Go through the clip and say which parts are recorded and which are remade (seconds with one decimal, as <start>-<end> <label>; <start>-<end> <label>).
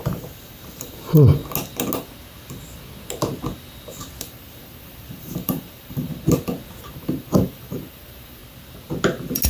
0.0-1.4 remade; 1.4-4.2 recorded; 4.2-6.1 remade; 6.1-6.8 recorded; 6.8-8.4 remade; 8.4-9.5 recorded